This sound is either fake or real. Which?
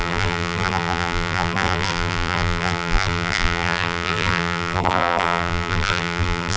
fake